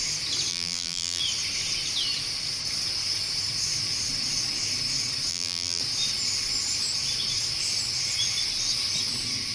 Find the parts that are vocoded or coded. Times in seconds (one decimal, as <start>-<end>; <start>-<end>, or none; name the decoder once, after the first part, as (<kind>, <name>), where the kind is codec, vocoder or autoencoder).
0.5-1.2 (vocoder, BigVGAN v2); 5.3-5.8